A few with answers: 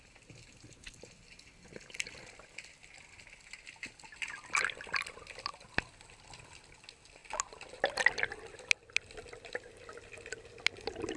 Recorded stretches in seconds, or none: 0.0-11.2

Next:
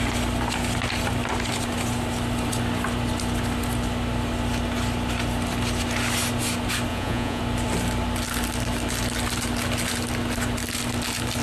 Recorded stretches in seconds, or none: 0.0-6.9; 7.4-11.4

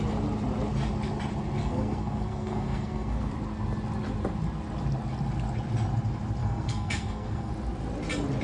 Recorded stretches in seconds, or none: 0.0-1.6; 3.3-6.4; 7.5-8.4

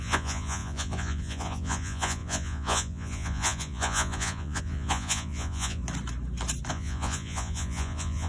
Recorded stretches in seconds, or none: 5.8-6.7

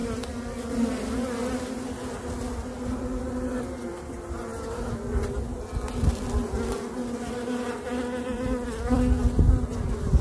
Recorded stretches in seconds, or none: 0.0-10.2

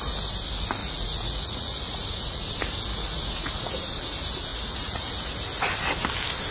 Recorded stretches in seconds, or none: 0.0-0.8; 2.4-2.9; 3.7-4.5; 5.1-6.5

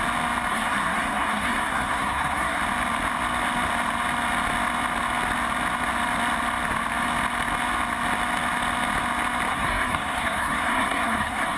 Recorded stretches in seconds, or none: 0.0-0.5; 2.6-9.5